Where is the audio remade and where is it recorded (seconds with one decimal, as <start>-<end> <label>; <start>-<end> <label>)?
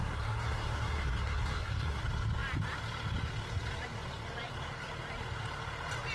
0.0-2.0 remade; 2.0-6.1 recorded